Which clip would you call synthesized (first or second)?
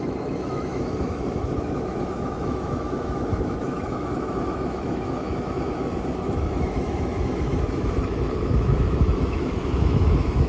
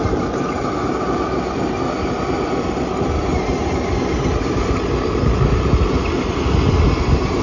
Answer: first